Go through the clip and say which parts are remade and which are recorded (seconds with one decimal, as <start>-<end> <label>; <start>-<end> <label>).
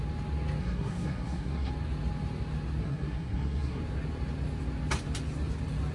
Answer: 0.0-0.6 recorded; 0.6-1.7 remade; 1.7-2.8 recorded; 2.8-3.8 remade; 3.8-5.9 recorded